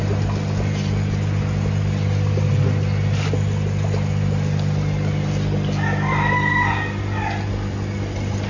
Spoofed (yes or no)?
no